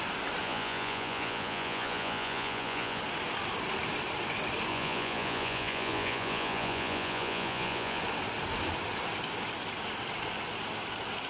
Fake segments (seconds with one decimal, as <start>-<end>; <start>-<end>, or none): 0.4-3.0; 4.7-8.0

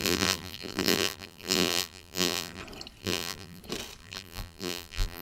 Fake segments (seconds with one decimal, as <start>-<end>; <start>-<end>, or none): 0.0-2.6; 3.0-3.6; 4.0-5.2